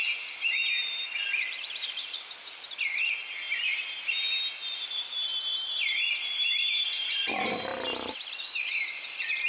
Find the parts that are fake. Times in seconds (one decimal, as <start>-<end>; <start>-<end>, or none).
0.0-7.7